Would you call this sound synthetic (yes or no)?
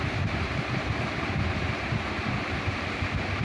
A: yes